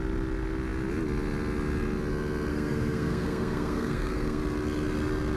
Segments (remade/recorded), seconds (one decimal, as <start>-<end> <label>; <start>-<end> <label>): 0.0-2.5 recorded; 2.5-4.4 remade; 4.4-5.4 recorded